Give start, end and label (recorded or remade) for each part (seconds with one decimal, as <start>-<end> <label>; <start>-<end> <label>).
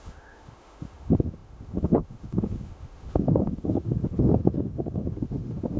0.0-5.8 remade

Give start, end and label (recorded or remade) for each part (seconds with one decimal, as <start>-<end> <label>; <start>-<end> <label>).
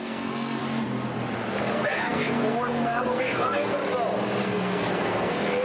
0.0-0.6 remade; 0.6-1.6 recorded; 1.6-3.8 remade; 3.8-4.4 recorded; 4.4-5.6 remade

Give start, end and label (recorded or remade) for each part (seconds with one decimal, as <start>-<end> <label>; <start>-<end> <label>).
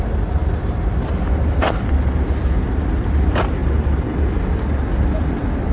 0.0-0.4 recorded; 0.4-1.9 remade; 1.9-5.7 recorded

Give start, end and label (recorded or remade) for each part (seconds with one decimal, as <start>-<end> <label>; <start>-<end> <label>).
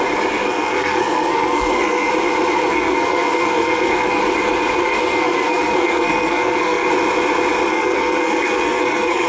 0.0-0.4 recorded; 0.4-2.1 remade; 2.1-2.7 recorded; 2.7-4.2 remade; 4.2-4.8 recorded; 4.8-6.9 remade; 6.9-7.7 recorded; 7.7-9.3 remade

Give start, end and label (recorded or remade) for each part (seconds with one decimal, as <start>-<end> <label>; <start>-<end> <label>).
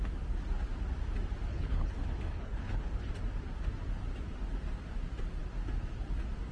0.0-1.5 recorded; 1.5-3.1 remade; 3.1-6.5 recorded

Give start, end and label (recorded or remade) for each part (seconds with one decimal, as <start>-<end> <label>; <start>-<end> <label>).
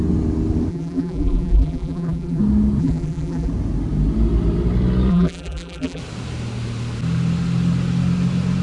0.0-0.7 recorded; 0.7-2.4 remade; 2.4-2.8 recorded; 2.8-3.5 remade; 3.5-5.1 recorded; 5.1-6.0 remade; 6.0-8.6 recorded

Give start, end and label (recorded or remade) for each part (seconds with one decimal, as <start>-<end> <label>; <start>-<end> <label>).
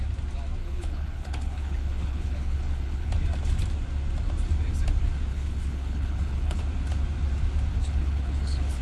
0.0-0.6 recorded; 0.6-3.1 remade; 3.1-5.3 recorded; 5.3-6.6 remade; 6.6-7.7 recorded; 7.7-8.8 remade